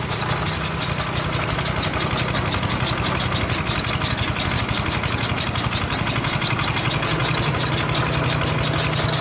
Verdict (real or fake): real